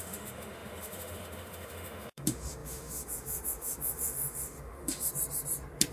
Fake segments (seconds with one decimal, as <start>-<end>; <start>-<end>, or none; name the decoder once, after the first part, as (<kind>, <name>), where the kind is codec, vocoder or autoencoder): 0.0-5.1 (autoencoder, DAC-VAE)